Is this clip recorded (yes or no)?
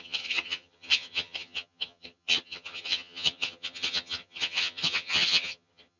no